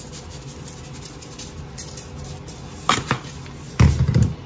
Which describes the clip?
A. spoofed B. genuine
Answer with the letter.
B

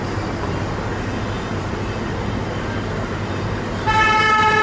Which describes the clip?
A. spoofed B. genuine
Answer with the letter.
B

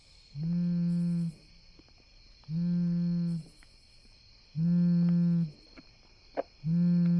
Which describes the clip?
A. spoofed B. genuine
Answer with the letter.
B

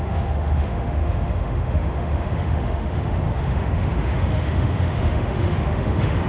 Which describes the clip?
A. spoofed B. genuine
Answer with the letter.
A